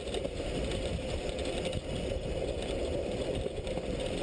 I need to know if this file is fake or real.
real